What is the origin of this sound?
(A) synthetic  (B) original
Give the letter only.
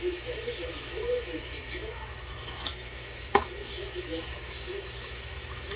A